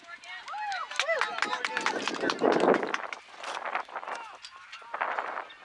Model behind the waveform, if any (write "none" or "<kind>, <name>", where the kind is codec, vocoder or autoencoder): none